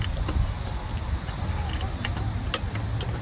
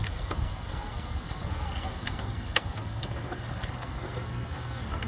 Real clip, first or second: first